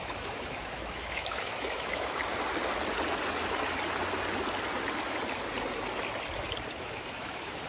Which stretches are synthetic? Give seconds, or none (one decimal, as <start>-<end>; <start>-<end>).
0.0-2.2; 6.8-7.7